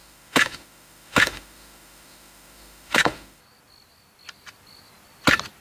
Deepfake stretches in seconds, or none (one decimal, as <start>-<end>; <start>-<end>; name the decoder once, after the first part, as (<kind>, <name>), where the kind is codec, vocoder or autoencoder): 0.0-3.4 (autoencoder, DAC-VAE)